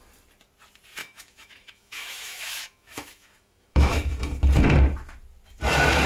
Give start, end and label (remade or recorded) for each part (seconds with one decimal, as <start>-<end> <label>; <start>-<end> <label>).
0.0-1.0 recorded; 1.0-4.1 remade; 4.1-6.1 recorded

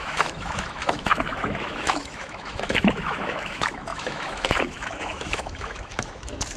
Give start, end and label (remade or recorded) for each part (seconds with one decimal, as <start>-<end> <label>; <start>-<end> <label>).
0.0-6.6 remade

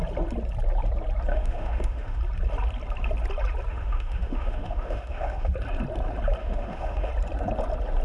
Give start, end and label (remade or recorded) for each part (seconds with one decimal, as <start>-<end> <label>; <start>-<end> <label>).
0.0-1.3 recorded; 1.3-2.2 remade; 2.2-3.7 recorded; 3.7-5.5 remade; 5.5-6.4 recorded; 6.4-7.1 remade; 7.1-8.0 recorded

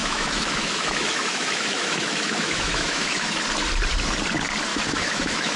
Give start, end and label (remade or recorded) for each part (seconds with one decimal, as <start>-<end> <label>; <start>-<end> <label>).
0.0-3.4 remade; 3.4-4.7 recorded; 4.7-5.6 remade

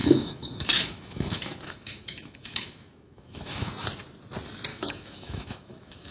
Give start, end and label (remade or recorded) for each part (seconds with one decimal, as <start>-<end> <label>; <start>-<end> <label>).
0.0-3.7 remade; 3.7-4.7 recorded; 4.7-6.1 remade

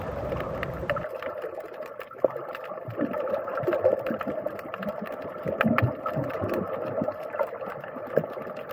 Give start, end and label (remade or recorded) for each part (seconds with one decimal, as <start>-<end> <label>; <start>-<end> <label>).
0.0-8.7 recorded

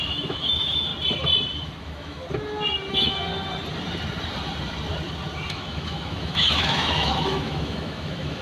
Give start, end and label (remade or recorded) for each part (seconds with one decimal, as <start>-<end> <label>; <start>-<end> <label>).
0.0-0.9 remade; 0.9-1.8 recorded; 1.8-2.2 remade; 2.2-2.9 recorded; 2.9-3.3 remade; 3.3-5.5 recorded; 5.5-8.4 remade